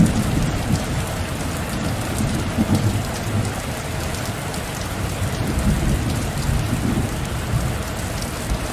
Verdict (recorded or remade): recorded